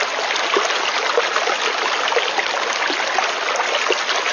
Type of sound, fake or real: real